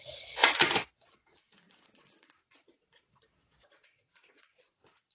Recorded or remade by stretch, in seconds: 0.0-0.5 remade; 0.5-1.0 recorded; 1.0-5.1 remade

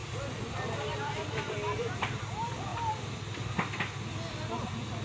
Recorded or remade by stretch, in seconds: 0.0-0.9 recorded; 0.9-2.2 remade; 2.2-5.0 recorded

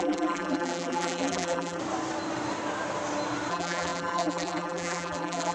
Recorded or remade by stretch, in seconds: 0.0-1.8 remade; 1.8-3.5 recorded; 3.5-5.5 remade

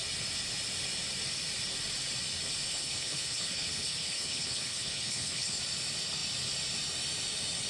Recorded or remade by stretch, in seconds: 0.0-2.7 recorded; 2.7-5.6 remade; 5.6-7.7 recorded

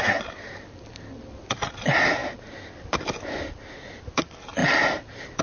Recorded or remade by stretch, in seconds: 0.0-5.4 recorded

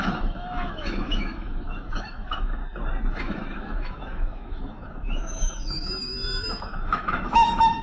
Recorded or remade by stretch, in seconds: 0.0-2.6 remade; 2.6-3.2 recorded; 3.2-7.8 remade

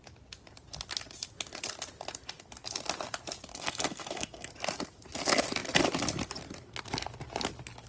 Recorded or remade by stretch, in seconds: 0.0-3.5 recorded; 3.5-4.5 remade; 4.5-7.9 recorded

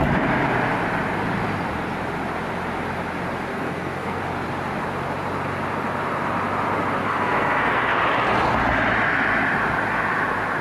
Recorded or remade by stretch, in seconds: 0.0-3.5 recorded; 3.5-4.2 remade; 4.2-7.0 recorded; 7.0-8.0 remade; 8.0-10.6 recorded